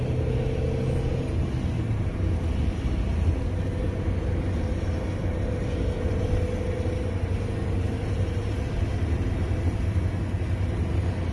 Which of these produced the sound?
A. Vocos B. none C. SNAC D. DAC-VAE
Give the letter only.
B